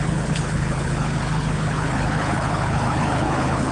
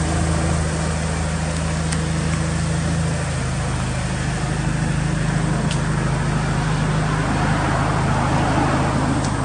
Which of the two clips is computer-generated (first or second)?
first